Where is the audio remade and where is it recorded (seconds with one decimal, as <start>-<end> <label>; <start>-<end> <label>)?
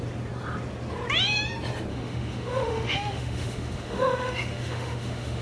0.0-1.9 recorded; 1.9-5.4 remade